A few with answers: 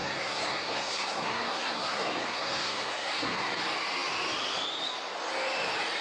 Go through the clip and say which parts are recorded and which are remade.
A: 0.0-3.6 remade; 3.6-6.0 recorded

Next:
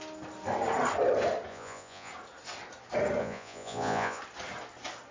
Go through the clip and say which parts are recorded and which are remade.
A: 0.0-1.5 recorded; 1.5-2.1 remade; 2.1-3.2 recorded; 3.2-4.2 remade; 4.2-5.1 recorded